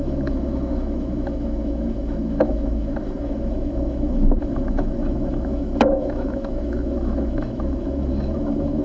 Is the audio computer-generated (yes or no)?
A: yes